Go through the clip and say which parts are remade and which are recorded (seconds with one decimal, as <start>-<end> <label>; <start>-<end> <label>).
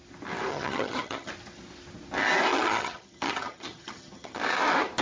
0.0-0.5 recorded; 0.5-1.3 remade; 1.3-2.5 recorded; 2.5-4.4 remade; 4.4-5.0 recorded